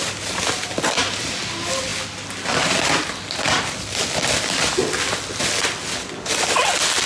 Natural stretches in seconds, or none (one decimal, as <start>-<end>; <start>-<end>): 0.0-7.1